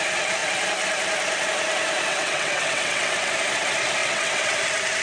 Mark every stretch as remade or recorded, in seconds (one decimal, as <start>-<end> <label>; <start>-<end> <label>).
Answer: 0.0-2.1 recorded; 2.1-3.3 remade; 3.3-4.0 recorded; 4.0-4.6 remade; 4.6-5.0 recorded